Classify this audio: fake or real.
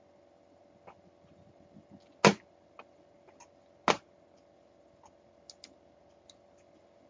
real